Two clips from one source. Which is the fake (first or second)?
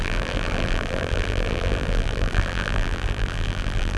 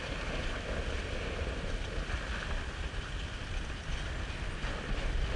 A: first